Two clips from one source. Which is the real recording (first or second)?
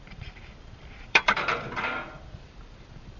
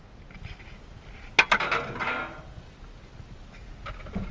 second